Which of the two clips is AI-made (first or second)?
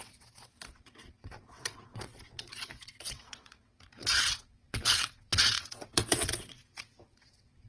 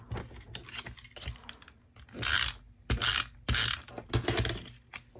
first